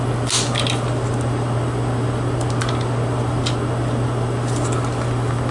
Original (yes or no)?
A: yes